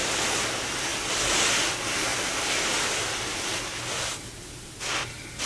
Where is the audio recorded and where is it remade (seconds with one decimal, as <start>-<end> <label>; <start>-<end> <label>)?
0.0-5.5 recorded